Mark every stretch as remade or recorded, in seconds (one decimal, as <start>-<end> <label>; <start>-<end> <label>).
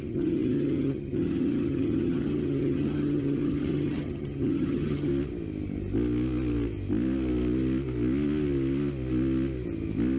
0.0-5.1 remade; 5.1-10.2 recorded